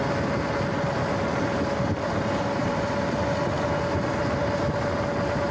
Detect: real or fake real